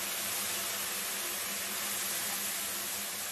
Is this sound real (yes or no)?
yes